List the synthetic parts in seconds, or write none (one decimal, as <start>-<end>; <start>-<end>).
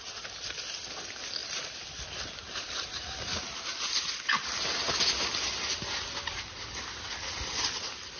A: none